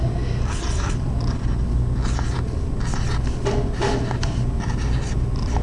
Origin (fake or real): real